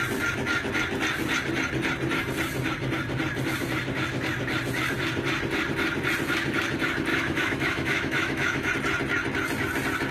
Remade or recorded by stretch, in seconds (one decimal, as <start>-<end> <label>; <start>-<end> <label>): 0.0-7.1 recorded; 7.1-8.7 remade; 8.7-10.1 recorded